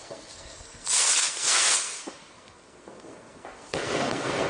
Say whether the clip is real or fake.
fake